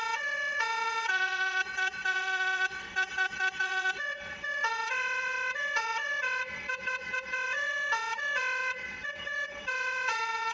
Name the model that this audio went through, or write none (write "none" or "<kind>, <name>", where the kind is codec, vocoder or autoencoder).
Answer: vocoder, WaveNeXt